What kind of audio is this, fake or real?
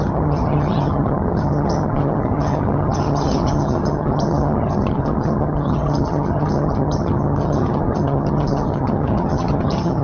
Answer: fake